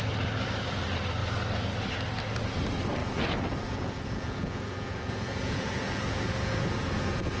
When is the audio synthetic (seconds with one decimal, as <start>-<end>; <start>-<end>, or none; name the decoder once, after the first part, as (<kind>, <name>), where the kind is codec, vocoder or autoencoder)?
3.0-7.4 (vocoder, Vocos)